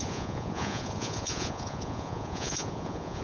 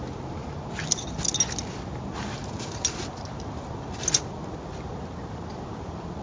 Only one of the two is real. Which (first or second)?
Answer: second